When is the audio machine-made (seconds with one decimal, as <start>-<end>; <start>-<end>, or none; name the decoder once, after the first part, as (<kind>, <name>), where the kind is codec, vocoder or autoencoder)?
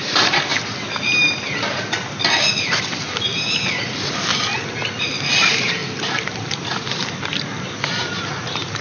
0.0-0.5 (vocoder, BigVGAN v2); 2.6-3.3; 3.9-4.3; 5.3-8.8